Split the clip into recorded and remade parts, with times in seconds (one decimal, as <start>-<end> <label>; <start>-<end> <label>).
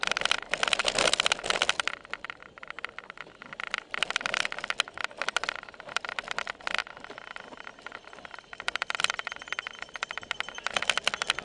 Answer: 0.0-11.4 recorded